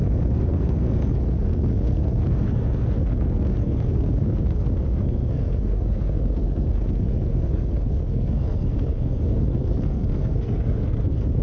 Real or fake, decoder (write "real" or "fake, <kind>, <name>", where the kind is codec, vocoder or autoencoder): fake, codec, SNAC